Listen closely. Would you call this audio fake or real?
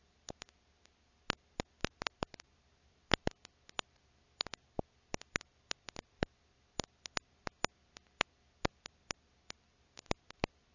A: real